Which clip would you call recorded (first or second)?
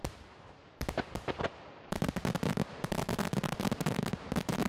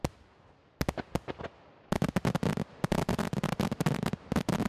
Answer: second